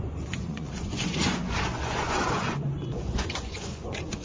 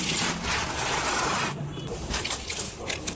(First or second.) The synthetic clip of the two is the first